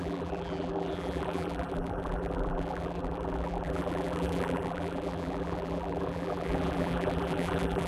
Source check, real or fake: fake